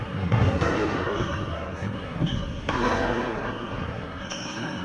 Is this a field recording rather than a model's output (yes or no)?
no